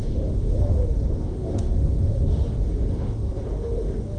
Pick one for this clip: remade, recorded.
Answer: remade